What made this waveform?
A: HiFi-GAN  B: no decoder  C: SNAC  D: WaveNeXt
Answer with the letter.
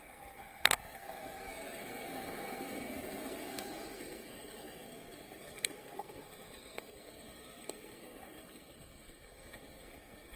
C